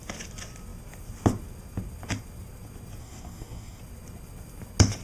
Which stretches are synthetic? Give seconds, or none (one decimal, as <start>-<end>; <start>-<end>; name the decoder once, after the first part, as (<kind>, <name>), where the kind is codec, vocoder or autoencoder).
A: 3.0-3.8 (codec, DAC)